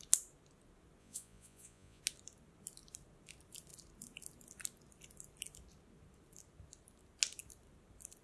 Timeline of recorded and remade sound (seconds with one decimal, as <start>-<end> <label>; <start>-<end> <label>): 0.0-1.0 recorded; 1.0-2.0 remade; 2.0-8.2 recorded